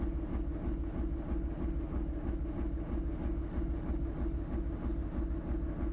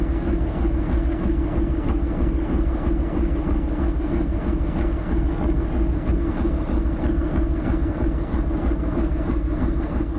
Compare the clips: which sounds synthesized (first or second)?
second